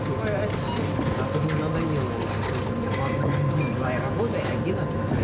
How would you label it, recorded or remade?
recorded